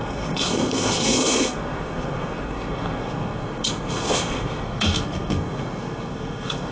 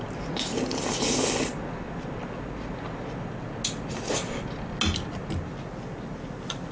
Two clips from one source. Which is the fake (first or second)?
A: first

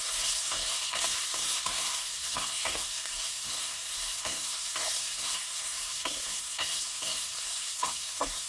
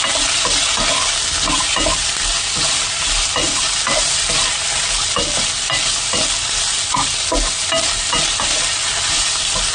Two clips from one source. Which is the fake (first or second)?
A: first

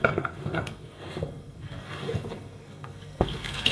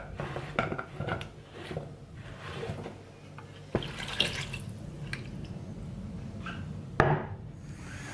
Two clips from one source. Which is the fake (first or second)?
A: first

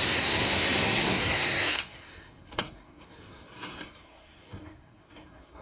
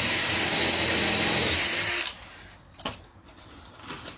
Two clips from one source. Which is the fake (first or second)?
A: first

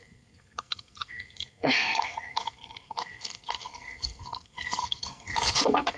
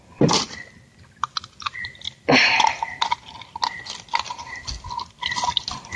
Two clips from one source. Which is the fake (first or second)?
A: first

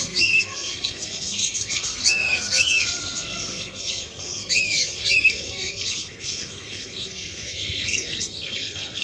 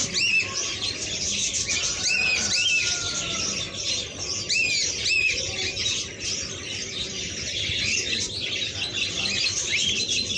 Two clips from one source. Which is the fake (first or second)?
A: first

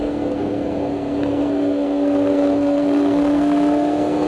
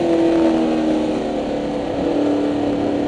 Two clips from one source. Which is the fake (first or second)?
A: first